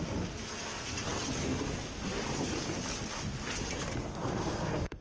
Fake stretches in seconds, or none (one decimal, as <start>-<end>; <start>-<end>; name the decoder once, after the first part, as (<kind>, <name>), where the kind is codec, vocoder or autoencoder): 4.2-5.0 (codec, SNAC)